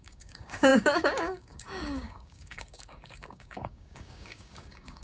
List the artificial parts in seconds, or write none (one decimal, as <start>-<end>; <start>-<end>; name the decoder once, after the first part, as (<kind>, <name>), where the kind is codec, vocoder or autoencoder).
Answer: 0.0-5.0 (codec, DAC)